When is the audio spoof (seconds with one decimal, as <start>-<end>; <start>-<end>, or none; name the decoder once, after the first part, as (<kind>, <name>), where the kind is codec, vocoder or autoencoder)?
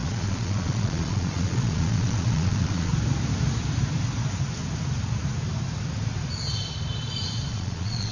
0.0-2.9 (vocoder, Vocos); 7.5-8.1